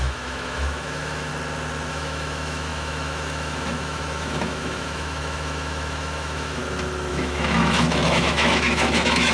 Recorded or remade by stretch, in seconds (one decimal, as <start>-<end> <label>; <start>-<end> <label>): 0.0-1.3 remade; 1.3-1.9 recorded; 1.9-6.6 remade; 6.6-7.1 recorded; 7.1-9.3 remade